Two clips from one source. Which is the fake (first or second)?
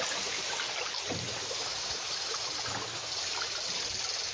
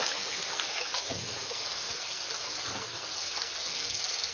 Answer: second